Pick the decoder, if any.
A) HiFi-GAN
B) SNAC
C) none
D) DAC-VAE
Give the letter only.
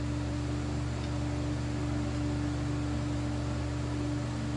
C